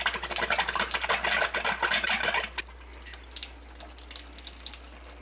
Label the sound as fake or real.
real